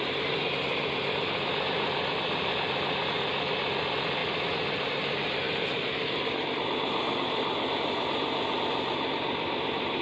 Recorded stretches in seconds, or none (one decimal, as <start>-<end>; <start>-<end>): 0.0-10.0